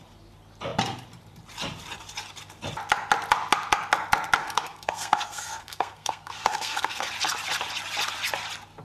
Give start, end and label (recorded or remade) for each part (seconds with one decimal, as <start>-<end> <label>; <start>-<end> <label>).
0.0-4.4 recorded; 4.4-7.1 remade; 7.1-8.8 recorded